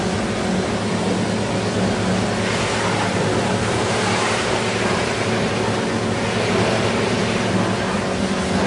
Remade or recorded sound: recorded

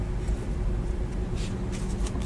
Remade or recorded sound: recorded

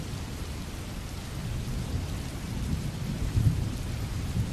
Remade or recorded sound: recorded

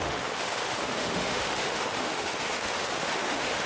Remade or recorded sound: remade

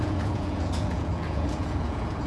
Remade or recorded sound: remade